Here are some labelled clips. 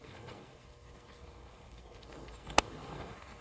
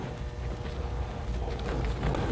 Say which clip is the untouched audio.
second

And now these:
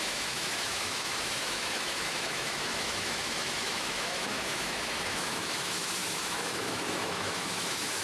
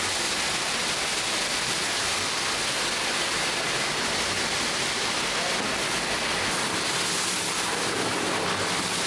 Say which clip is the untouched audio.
second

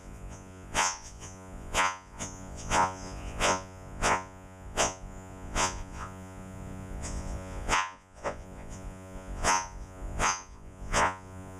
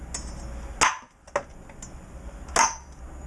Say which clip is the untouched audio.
second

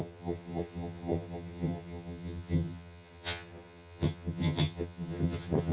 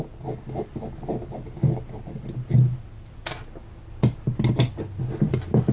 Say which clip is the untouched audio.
second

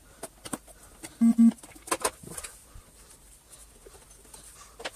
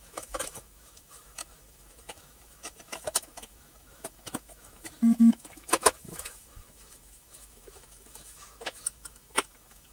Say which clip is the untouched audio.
first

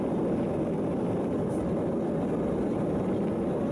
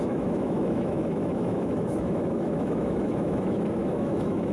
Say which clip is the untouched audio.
first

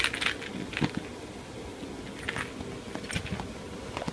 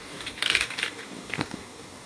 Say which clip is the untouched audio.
first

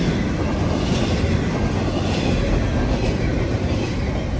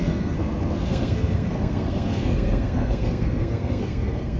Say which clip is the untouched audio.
first